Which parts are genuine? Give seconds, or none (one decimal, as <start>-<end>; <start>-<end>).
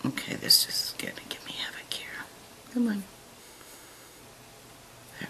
0.0-3.4; 4.2-5.3